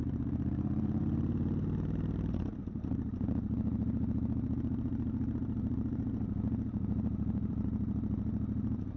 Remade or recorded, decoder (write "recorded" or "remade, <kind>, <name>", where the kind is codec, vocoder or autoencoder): remade, vocoder, BigVGAN v2